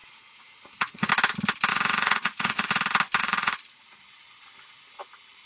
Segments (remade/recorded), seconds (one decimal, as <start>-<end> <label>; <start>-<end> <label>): 0.0-1.1 remade; 1.1-1.7 recorded; 1.7-2.7 remade; 2.7-3.2 recorded; 3.2-4.0 remade; 4.0-5.5 recorded